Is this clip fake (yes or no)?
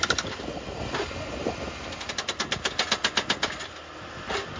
no